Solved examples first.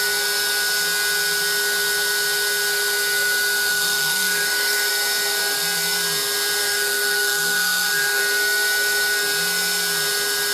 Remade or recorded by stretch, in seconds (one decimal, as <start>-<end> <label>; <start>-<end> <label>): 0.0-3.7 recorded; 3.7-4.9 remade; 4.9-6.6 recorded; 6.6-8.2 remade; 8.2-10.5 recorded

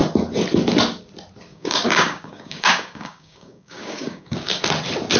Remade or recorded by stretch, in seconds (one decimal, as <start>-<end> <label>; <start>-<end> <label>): 0.0-1.5 recorded; 1.5-4.6 remade; 4.6-5.2 recorded

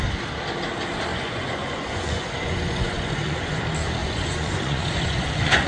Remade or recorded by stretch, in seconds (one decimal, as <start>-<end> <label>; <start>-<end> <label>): 0.0-1.1 recorded; 1.1-3.6 remade; 3.6-4.0 recorded; 4.0-5.7 remade

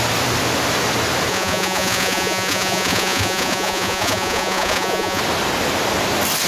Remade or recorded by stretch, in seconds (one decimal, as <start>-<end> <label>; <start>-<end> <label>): 0.0-1.3 recorded; 1.3-5.2 remade; 5.2-6.5 recorded

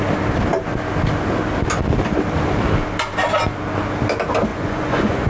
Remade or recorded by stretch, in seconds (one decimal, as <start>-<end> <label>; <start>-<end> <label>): 0.0-4.5 recorded; 4.5-5.3 remade

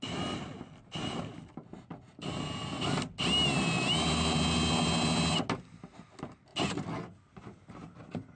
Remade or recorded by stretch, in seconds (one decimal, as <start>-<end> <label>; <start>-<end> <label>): 0.0-8.4 recorded